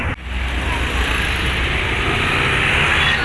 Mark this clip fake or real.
real